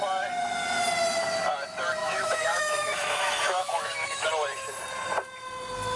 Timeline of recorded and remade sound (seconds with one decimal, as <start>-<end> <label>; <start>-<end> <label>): 0.0-2.0 recorded; 2.0-4.3 remade; 4.3-6.0 recorded